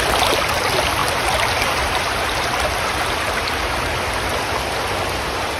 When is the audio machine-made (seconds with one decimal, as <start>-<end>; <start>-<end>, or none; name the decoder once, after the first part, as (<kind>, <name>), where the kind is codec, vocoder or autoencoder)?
none